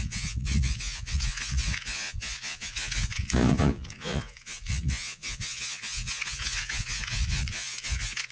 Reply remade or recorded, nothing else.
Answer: remade